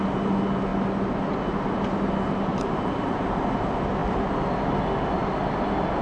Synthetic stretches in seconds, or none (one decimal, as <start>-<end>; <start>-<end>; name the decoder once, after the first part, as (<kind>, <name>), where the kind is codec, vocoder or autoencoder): 2.5-3.4 (vocoder, BigVGAN v2)